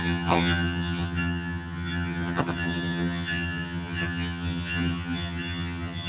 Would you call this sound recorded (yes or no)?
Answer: no